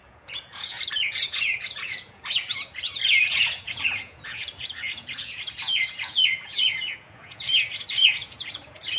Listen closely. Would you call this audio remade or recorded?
remade